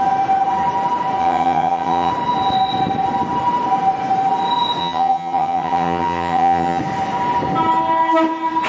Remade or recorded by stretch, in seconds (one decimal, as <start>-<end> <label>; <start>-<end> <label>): 0.0-1.2 recorded; 1.2-2.1 remade; 2.1-4.8 recorded; 4.8-6.8 remade; 6.8-8.7 recorded